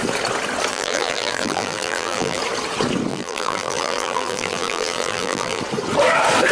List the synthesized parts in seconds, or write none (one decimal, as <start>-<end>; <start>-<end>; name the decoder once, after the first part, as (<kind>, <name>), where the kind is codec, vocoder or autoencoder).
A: 0.7-2.4 (vocoder, BigVGAN v2); 3.1-5.6